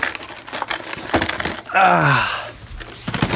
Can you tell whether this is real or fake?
real